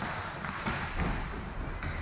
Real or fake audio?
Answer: real